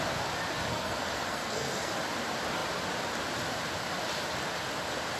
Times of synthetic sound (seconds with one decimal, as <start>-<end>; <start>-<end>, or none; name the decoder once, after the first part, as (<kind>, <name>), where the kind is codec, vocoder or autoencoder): 0.7-1.9 (codec, SNAC)